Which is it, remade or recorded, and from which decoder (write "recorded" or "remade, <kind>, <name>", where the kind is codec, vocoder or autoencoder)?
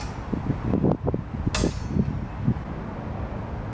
recorded